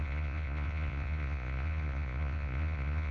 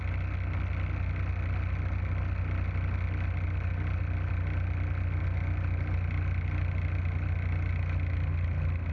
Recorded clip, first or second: second